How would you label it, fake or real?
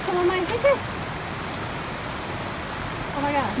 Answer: real